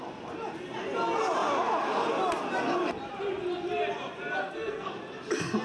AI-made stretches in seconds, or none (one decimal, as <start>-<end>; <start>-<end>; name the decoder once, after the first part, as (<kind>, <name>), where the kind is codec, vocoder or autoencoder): 4.4-4.9 (codec, SNAC)